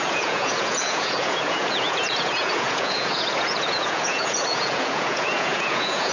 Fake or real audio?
fake